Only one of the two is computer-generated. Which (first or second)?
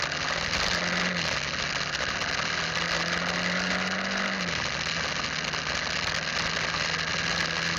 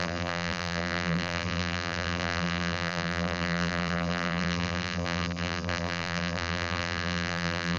second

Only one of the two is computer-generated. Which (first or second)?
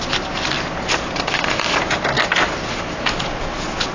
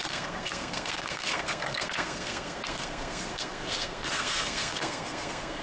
second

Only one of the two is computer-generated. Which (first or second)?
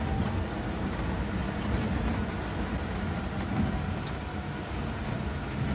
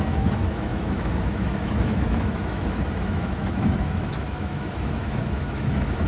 second